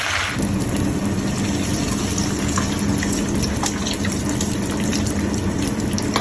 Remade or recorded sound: recorded